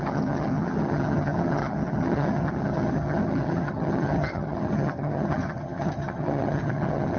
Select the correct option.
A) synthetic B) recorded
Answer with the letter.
A